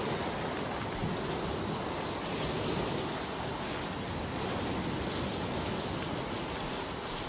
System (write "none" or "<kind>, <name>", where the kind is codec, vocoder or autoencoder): none